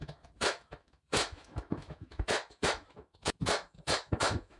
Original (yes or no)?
no